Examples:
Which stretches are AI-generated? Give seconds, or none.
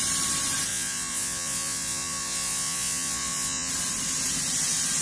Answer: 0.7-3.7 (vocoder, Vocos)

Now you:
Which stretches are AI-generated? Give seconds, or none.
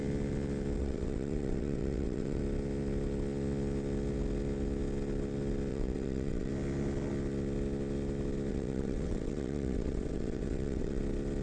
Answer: 0.8-2.4 (vocoder, WaveNeXt); 5.7-6.5; 8.5-11.0